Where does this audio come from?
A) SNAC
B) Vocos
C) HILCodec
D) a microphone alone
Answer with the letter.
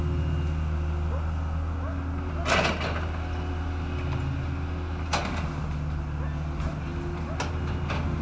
D